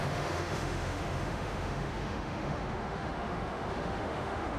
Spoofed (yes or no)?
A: yes